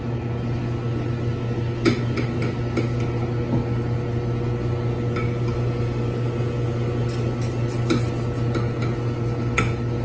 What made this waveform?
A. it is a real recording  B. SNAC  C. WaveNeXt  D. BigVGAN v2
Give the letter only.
A